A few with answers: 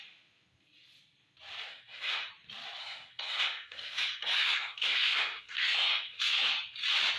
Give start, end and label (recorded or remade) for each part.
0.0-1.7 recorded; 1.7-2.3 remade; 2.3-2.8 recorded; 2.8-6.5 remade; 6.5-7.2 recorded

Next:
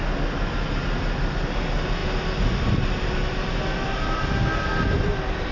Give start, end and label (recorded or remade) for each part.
0.0-5.5 recorded

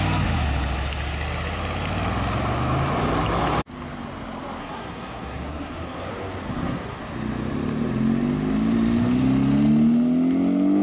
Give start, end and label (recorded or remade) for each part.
0.0-4.6 recorded; 4.6-6.1 remade; 6.1-6.5 recorded; 6.5-7.0 remade; 7.0-10.8 recorded

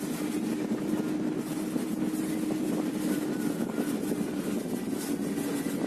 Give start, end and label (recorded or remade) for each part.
0.0-5.9 recorded

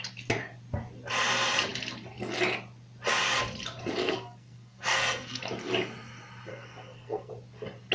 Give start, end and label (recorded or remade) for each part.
0.0-4.0 recorded; 4.0-5.4 remade; 5.4-6.5 recorded; 6.5-7.3 remade; 7.3-7.9 recorded